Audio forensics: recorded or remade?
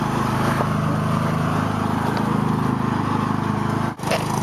recorded